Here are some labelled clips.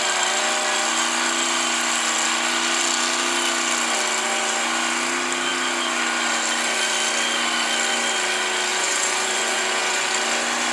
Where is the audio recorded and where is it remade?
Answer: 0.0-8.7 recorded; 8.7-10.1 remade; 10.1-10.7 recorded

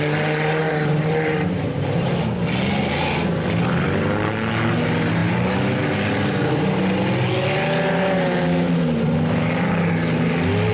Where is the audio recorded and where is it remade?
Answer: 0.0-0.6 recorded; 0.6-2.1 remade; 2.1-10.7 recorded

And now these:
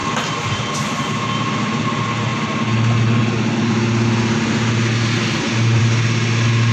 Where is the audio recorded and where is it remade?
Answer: 0.0-6.7 recorded